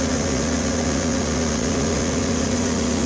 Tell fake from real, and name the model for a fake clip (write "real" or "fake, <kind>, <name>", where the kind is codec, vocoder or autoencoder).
fake, vocoder, Vocos